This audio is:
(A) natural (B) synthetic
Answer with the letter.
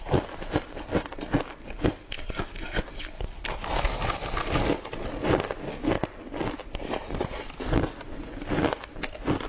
A